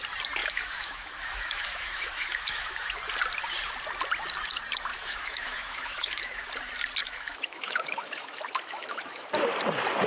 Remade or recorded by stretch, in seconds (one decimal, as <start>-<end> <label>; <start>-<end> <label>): 0.0-0.4 recorded; 0.4-2.9 remade; 2.9-4.9 recorded; 4.9-6.5 remade; 6.5-7.0 recorded; 7.0-9.3 remade; 9.3-10.1 recorded